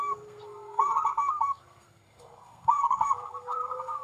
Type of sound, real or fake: fake